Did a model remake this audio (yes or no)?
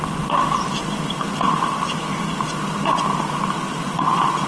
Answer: no